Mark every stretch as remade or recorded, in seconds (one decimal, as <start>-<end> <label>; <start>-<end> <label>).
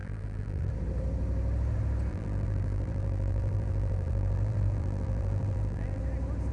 0.0-0.7 remade; 0.7-2.1 recorded; 2.1-6.0 remade; 6.0-6.5 recorded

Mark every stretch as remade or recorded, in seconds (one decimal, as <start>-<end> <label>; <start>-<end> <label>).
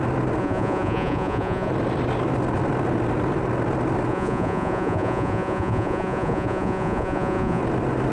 0.0-0.4 recorded; 0.4-1.7 remade; 1.7-4.1 recorded; 4.1-7.6 remade; 7.6-8.1 recorded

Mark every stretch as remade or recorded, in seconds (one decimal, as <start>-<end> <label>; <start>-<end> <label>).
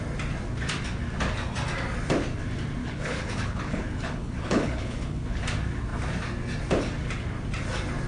0.0-2.8 recorded; 2.8-5.4 remade; 5.4-8.1 recorded